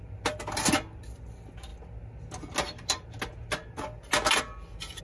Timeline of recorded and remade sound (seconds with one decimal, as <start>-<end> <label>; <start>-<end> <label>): 0.0-5.0 recorded